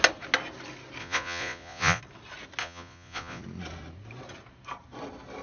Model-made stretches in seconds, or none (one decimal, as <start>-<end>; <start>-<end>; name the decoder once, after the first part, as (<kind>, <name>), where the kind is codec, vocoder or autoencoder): 1.0-2.0 (vocoder, Vocos); 2.6-3.4